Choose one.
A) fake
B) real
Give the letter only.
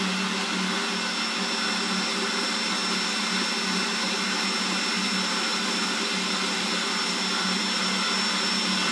B